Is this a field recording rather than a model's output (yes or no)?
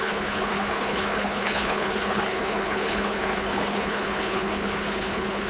no